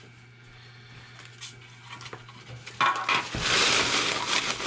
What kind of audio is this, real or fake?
real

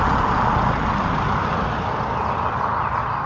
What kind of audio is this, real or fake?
real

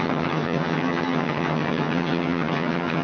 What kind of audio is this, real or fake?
fake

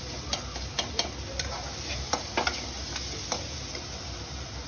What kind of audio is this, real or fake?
real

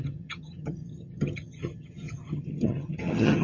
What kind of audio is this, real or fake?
fake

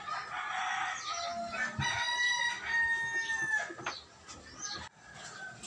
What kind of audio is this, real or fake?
real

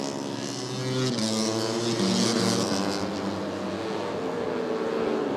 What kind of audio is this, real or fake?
real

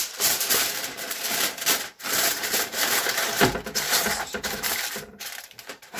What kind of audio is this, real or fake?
fake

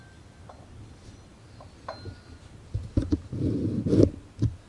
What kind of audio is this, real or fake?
real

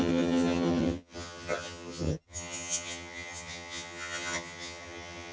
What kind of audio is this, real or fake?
fake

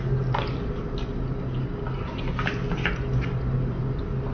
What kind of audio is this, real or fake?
real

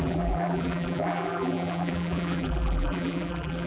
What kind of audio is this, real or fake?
fake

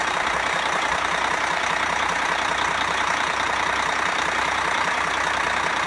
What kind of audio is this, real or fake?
fake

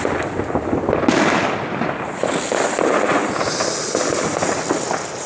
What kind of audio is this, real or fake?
real